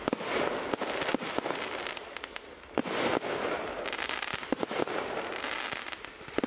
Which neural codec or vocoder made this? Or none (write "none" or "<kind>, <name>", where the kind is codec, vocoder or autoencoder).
none